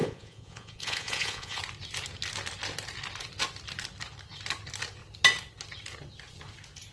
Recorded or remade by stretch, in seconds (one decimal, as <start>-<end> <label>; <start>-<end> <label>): 0.0-1.6 remade; 1.6-6.9 recorded